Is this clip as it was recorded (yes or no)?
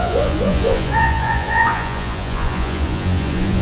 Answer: no